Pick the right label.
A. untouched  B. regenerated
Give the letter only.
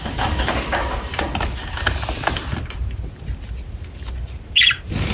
A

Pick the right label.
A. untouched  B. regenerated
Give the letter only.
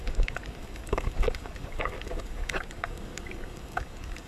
B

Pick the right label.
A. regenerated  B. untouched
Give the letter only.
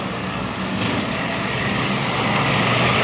A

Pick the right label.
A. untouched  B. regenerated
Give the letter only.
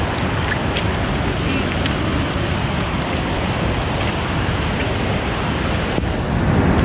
A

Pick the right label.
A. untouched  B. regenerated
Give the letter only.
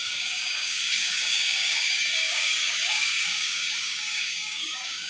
B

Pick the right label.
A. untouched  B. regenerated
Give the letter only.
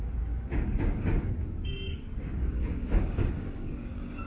B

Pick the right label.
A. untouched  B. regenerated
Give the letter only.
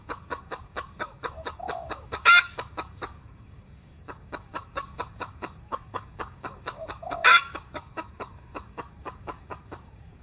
B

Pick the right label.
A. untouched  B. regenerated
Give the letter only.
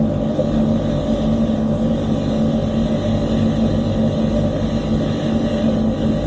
A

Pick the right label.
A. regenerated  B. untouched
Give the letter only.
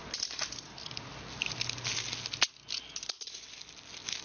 B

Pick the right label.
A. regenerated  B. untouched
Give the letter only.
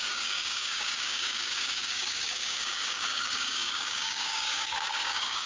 A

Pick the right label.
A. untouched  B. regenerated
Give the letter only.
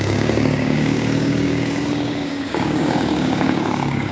B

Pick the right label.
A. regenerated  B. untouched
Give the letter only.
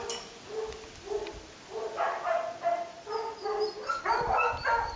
B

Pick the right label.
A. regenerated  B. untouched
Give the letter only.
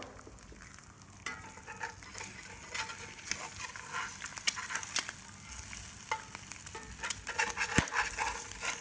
B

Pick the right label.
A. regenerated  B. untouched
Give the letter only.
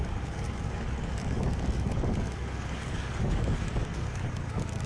A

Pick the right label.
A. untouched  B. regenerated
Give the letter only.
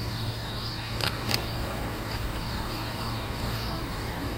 B